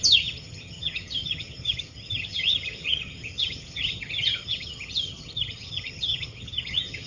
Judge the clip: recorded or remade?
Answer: remade